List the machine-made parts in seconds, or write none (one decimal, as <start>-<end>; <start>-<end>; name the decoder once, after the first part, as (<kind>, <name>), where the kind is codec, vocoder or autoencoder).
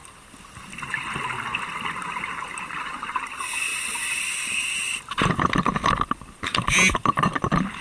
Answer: none